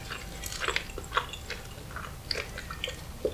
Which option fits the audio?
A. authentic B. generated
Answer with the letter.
A